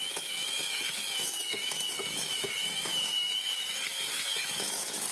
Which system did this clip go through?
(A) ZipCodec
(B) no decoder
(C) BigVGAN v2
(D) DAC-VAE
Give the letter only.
D